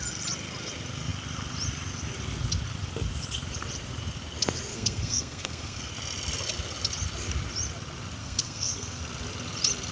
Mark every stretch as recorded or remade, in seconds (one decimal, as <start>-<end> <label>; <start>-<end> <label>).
0.0-4.7 recorded; 4.7-5.9 remade; 5.9-8.2 recorded; 8.2-9.0 remade; 9.0-9.9 recorded